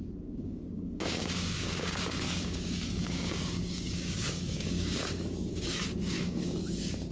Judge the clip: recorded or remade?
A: remade